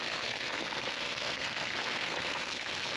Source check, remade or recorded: remade